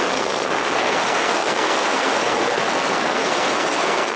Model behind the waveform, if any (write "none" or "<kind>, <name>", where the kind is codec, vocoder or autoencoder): codec, SNAC